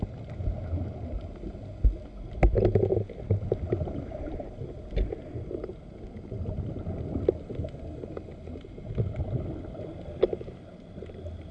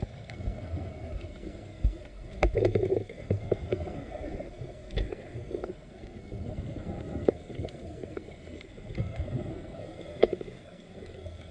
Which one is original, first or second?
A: first